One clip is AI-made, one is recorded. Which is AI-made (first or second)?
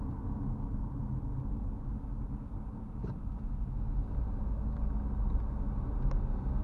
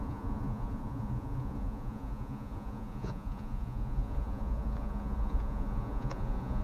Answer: second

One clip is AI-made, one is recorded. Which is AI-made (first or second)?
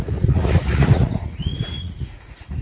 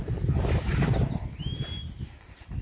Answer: first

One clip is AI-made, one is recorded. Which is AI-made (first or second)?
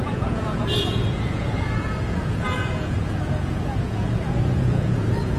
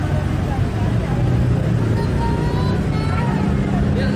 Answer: first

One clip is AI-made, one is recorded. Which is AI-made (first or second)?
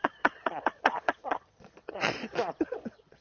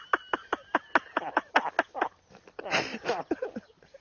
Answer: first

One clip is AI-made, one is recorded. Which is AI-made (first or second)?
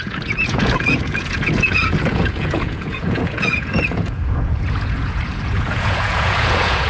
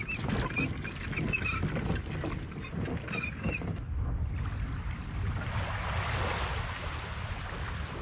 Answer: first